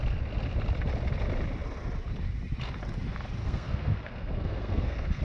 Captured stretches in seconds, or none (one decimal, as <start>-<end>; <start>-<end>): 0.0-3.4